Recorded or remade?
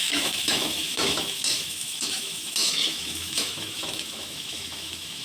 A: remade